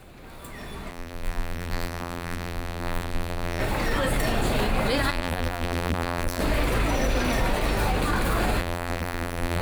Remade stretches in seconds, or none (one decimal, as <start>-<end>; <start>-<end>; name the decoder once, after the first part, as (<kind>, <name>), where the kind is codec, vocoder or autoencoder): 0.9-3.6 (vocoder, BigVGAN v2); 5.1-6.4; 8.6-9.6